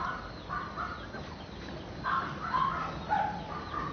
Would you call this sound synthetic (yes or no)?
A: no